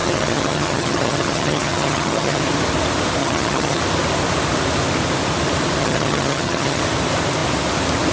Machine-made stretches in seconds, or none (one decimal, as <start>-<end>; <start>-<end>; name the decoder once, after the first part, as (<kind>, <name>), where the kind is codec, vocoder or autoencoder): 0.0-2.4 (vocoder, HiFi-GAN); 3.2-3.8; 5.8-6.8